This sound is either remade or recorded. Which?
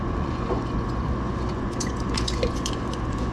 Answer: remade